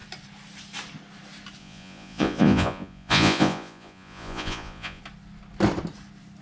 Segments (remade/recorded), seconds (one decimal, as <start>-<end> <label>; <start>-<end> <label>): 0.0-1.6 recorded; 1.6-5.0 remade; 5.0-6.4 recorded